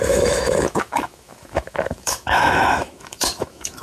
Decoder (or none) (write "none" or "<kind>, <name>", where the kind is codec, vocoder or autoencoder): autoencoder, DAC-VAE